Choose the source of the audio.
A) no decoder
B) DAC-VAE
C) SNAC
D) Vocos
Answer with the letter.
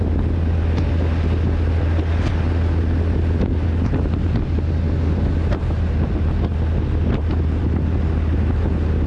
A